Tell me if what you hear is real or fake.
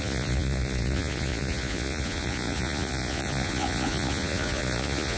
fake